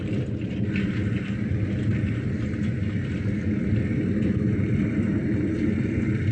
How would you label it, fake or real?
real